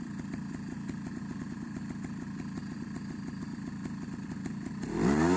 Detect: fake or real real